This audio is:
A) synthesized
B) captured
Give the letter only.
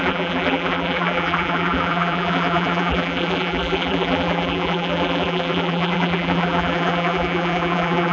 A